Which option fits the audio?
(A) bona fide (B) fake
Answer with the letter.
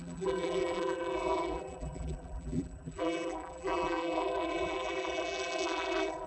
B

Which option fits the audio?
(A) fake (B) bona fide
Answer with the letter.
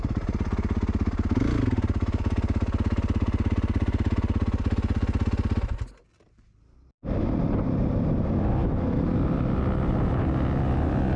B